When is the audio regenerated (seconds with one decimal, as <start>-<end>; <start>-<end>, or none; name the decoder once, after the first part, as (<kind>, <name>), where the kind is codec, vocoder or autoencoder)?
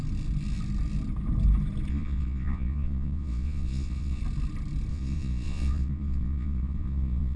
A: 1.9-4.2 (vocoder, Vocos); 4.9-7.4